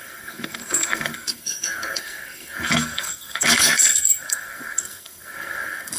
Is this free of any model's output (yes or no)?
no